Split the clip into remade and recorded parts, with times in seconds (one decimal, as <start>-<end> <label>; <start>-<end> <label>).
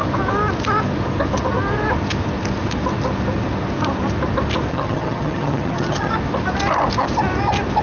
0.0-4.7 recorded; 4.7-6.1 remade; 6.1-7.8 recorded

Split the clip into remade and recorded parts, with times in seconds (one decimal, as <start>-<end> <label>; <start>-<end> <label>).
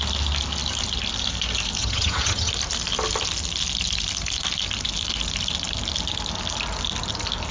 0.0-1.8 recorded; 1.8-2.5 remade; 2.5-7.5 recorded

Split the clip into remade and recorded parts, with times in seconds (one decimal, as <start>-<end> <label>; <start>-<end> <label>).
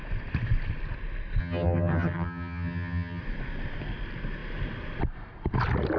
0.0-1.4 recorded; 1.4-3.2 remade; 3.2-6.0 recorded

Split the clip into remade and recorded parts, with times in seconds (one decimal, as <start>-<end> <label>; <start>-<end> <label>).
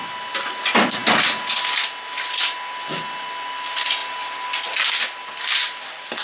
0.0-6.2 recorded